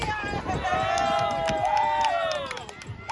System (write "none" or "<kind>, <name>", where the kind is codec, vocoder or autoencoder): none